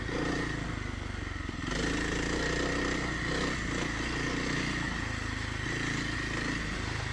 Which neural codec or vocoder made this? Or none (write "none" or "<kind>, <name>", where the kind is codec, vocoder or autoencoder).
none